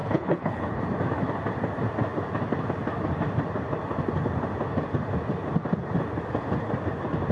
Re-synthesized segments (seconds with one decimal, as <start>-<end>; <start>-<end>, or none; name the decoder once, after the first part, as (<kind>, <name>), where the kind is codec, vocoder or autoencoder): 0.0-0.8 (codec, HILCodec)